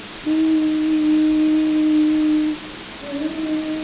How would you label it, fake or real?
real